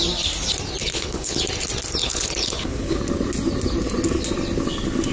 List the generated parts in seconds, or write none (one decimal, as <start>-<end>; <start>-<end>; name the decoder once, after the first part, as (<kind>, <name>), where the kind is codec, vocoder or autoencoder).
0.8-1.4 (codec, HILCodec); 2.0-3.0